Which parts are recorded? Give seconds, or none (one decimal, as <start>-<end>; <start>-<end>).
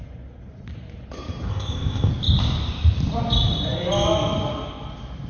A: 0.0-1.5; 2.1-5.3